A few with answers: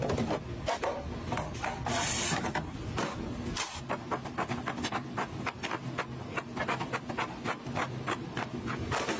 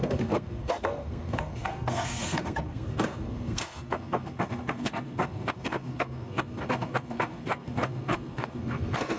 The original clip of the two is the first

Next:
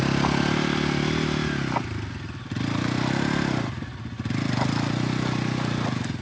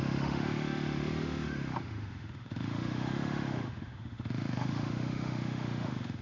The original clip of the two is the first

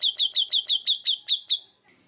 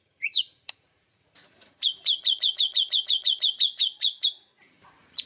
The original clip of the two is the first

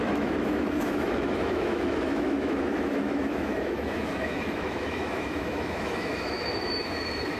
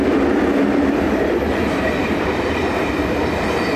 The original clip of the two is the second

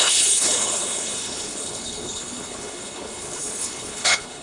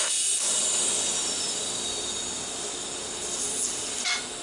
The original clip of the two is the second